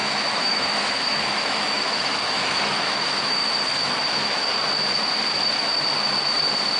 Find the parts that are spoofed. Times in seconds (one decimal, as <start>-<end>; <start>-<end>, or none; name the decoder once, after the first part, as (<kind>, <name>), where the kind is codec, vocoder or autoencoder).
0.0-3.4 (autoencoder, DAC-VAE); 4.1-4.5